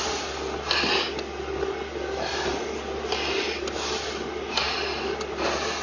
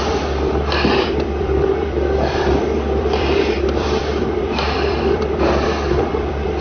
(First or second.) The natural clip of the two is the first